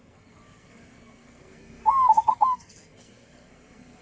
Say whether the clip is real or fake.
fake